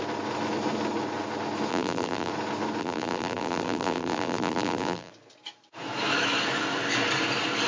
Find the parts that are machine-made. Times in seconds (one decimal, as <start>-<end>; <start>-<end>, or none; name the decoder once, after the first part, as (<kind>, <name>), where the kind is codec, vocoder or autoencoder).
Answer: 1.7-2.3 (vocoder, BigVGAN v2); 2.8-5.1